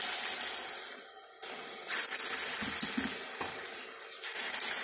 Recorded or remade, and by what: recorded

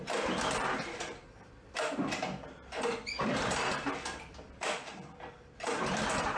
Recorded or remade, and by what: remade, vocoder, BigVGAN v2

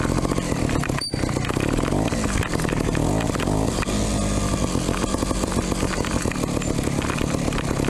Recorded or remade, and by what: recorded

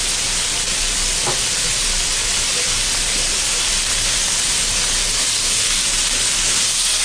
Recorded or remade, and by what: recorded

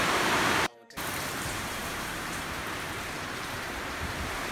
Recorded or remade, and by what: remade, vocoder, BigVGAN v2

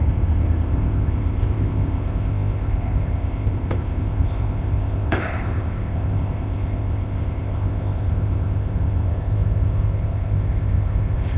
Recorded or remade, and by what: remade, codec, ZipCodec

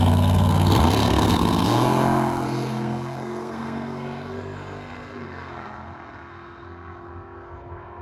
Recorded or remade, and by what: remade, codec, SNAC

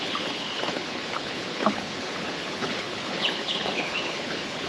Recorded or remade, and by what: remade, codec, HILCodec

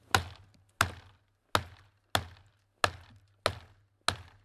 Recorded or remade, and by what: recorded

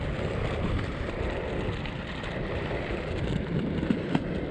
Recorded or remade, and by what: remade, vocoder, BigVGAN v2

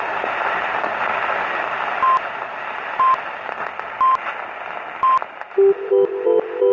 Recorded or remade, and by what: recorded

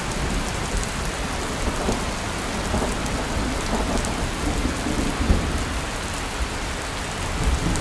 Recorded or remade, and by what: recorded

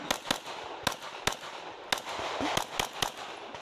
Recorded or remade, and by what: recorded